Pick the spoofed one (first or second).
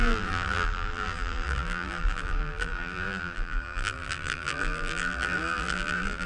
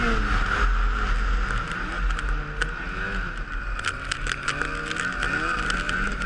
first